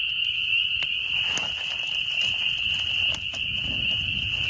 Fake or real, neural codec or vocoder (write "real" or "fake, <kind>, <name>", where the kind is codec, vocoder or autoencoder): real